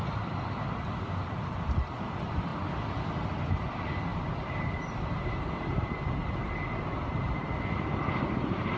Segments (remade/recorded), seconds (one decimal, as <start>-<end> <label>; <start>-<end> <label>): 0.0-2.5 remade; 2.5-3.1 recorded; 3.1-6.2 remade; 6.2-7.2 recorded; 7.2-8.8 remade